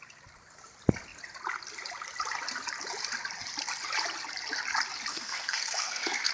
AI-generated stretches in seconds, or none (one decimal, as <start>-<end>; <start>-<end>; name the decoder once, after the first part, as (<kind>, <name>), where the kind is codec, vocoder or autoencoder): 5.1-6.3 (codec, SNAC)